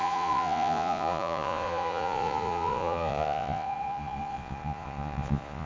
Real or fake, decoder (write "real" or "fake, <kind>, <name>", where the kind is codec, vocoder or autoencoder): fake, vocoder, Vocos